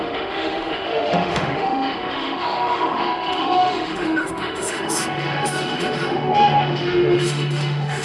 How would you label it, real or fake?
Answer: fake